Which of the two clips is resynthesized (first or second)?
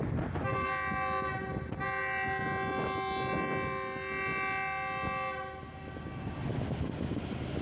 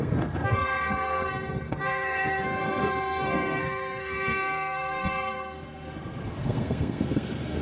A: second